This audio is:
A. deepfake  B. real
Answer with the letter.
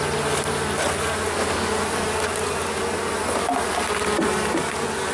B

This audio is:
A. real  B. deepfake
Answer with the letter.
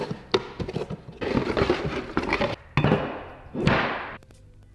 A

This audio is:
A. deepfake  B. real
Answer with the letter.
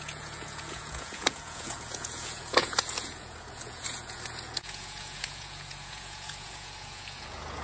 A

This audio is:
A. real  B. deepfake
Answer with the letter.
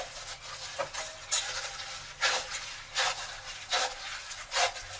A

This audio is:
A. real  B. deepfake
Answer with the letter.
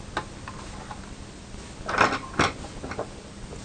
A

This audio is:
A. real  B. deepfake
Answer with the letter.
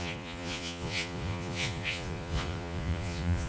B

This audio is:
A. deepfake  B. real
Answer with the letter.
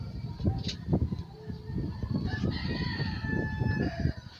B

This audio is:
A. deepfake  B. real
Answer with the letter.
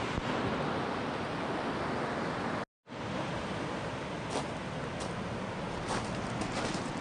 B